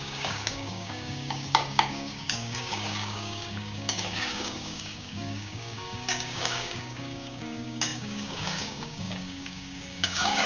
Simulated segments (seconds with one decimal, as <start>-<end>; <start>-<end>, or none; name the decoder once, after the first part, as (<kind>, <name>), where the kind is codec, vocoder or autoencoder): 0.0-10.5 (codec, DAC)